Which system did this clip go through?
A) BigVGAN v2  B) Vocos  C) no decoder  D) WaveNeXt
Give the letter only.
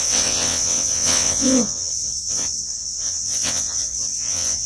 D